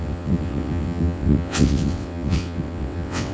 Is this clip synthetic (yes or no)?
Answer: yes